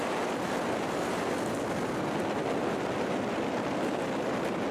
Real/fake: real